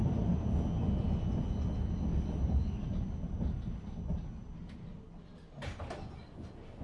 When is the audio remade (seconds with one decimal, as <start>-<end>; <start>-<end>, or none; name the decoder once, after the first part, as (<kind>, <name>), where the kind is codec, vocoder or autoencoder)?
0.0-0.6 (vocoder, BigVGAN v2); 2.1-3.4